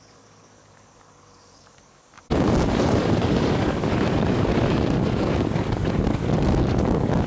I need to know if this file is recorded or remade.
remade